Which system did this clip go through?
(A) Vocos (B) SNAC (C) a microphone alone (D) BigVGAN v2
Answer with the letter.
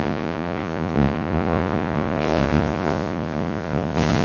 A